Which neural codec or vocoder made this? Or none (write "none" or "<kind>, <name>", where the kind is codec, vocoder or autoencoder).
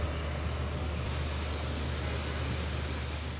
none